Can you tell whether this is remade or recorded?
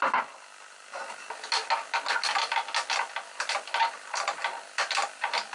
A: recorded